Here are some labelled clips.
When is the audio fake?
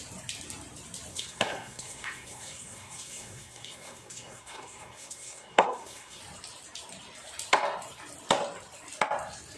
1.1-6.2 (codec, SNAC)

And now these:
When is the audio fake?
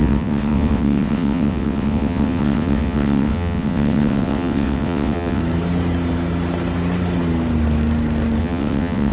0.0-5.4 (vocoder, WaveNeXt); 8.4-9.1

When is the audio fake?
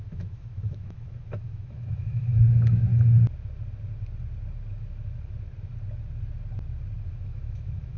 0.0-2.9 (autoencoder, DAC-VAE); 7.1-8.0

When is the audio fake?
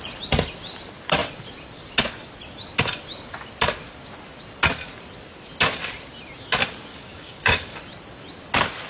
6.9-7.8 (codec, DAC)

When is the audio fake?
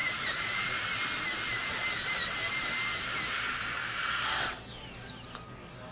0.0-0.8 (vocoder, Vocos)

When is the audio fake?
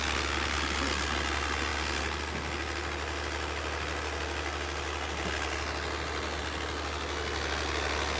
none